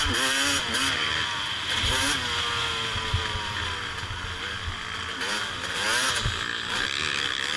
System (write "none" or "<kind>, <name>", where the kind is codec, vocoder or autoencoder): none